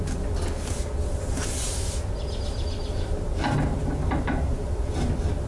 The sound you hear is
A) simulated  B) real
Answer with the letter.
B